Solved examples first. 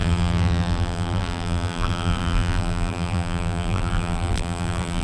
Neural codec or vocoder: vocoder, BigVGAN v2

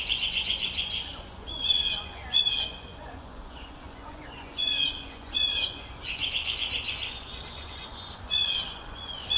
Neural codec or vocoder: vocoder, Vocos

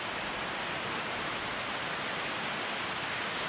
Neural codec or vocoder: none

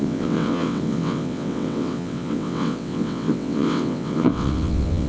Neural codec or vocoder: vocoder, WaveNeXt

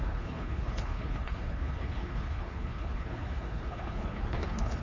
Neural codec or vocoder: codec, HILCodec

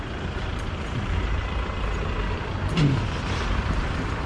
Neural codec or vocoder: vocoder, BigVGAN v2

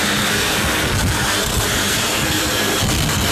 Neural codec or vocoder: codec, SNAC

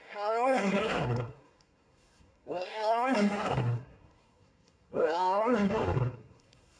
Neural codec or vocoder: codec, SNAC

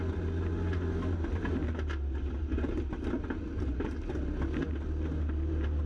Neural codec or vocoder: none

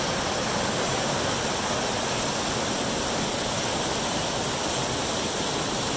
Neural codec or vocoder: none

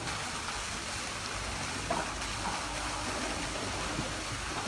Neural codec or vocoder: none